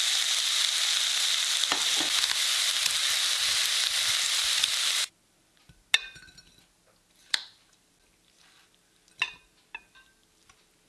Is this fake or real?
real